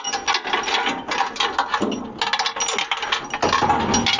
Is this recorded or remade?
recorded